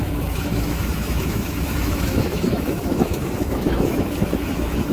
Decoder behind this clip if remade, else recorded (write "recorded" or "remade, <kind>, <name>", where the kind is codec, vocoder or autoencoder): remade, autoencoder, DAC-VAE